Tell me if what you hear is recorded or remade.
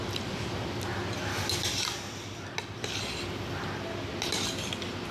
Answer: recorded